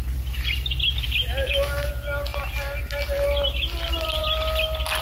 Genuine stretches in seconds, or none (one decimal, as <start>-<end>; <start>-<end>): 0.0-1.4; 1.9-5.0